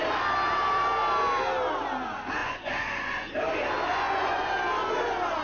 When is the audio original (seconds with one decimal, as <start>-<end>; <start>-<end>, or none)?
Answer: 0.0-2.4; 3.3-3.9; 4.5-5.4